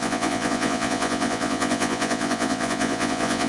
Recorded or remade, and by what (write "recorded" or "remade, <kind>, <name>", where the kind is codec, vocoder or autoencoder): remade, vocoder, Vocos